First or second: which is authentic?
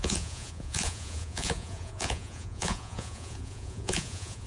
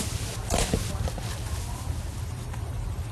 second